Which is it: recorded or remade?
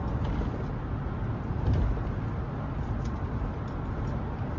recorded